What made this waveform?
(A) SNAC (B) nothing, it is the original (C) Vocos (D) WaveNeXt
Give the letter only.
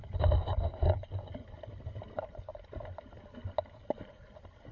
B